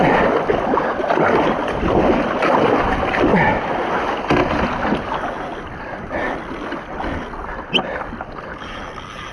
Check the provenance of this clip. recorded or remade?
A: recorded